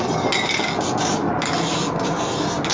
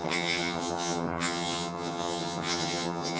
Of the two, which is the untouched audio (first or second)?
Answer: first